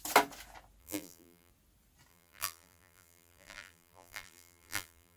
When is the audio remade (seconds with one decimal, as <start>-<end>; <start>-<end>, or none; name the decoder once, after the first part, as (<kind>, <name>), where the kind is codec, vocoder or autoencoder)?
0.8-1.5 (vocoder, BigVGAN v2); 2.1-5.2